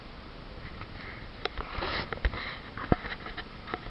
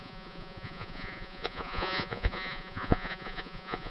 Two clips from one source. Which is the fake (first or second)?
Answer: second